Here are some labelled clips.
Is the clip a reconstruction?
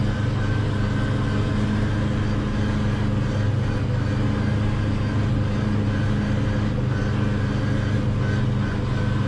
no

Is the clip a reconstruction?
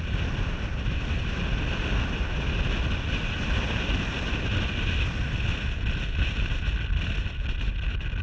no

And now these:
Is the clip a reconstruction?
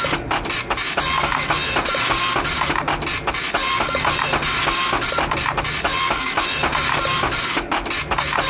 no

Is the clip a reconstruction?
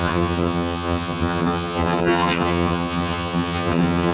yes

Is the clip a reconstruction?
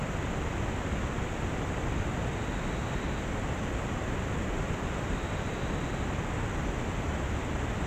no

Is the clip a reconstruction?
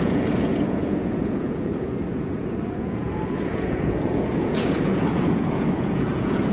yes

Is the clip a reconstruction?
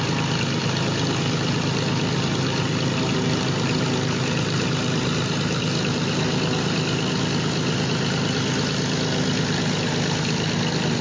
no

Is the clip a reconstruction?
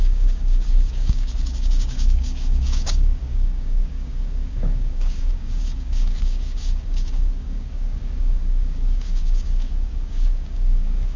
yes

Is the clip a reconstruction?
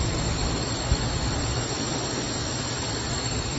no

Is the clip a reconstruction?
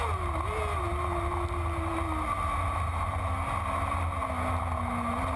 no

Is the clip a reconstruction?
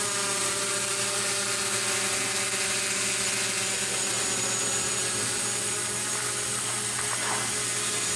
no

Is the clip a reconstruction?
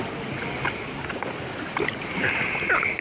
no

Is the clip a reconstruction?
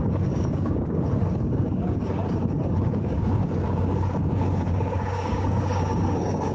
yes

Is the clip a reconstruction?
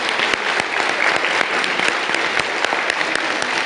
no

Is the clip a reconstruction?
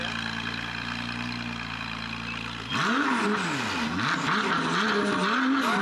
no